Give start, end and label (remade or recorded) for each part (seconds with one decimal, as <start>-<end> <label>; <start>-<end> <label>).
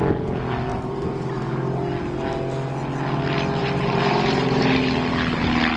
0.0-0.7 recorded; 0.7-1.8 remade; 1.8-3.6 recorded; 3.6-4.8 remade; 4.8-5.8 recorded